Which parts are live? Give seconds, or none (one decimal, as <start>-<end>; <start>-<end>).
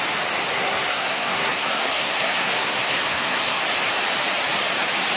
0.0-0.5; 3.6-5.2